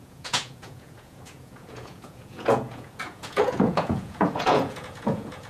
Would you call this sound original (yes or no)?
no